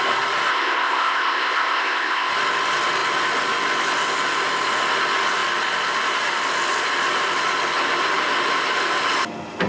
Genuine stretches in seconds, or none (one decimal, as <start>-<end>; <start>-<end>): 0.0-0.5; 2.3-9.7